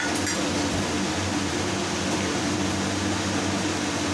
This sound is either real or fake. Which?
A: real